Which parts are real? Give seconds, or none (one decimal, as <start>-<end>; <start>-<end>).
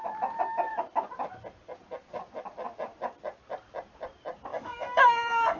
0.0-4.5